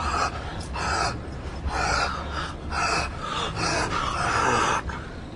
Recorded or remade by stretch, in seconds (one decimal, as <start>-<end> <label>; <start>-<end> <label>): 0.0-5.4 recorded